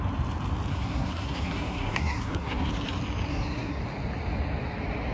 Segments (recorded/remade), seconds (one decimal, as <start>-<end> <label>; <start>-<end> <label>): 0.0-0.7 recorded; 0.7-2.7 remade; 2.7-3.3 recorded; 3.3-3.8 remade; 3.8-5.1 recorded